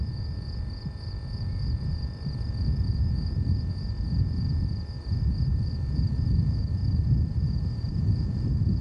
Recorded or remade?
recorded